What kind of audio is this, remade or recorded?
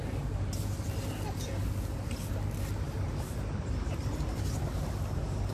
recorded